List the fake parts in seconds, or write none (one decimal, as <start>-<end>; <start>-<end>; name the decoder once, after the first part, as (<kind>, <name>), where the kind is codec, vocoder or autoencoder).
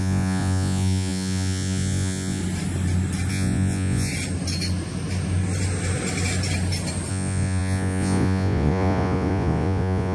0.0-2.4 (vocoder, Vocos); 3.3-4.1; 7.1-10.1